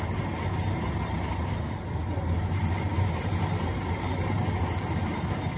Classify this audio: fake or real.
real